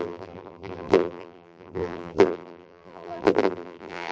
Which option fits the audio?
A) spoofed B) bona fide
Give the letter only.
A